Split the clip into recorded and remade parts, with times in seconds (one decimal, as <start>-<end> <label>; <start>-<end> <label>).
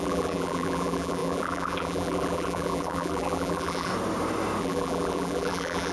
0.0-3.9 remade; 3.9-4.6 recorded; 4.6-5.9 remade